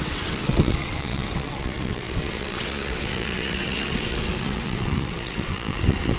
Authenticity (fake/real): fake